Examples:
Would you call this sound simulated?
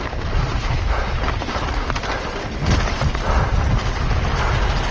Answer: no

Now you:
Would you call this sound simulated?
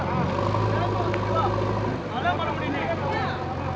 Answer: no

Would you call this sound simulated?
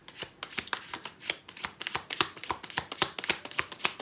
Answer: no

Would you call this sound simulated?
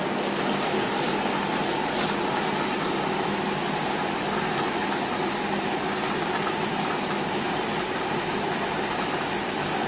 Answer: no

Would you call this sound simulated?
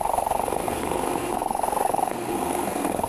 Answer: yes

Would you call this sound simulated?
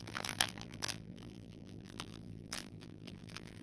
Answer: yes